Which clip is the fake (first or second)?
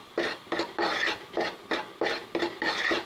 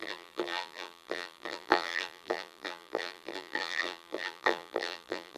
second